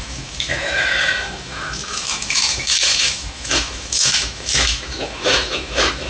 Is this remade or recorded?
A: remade